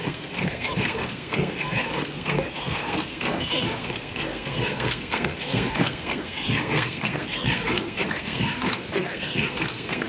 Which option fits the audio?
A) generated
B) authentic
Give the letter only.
A